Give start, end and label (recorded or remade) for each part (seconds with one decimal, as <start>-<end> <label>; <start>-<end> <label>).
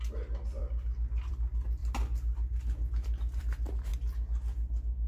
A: 0.0-5.1 recorded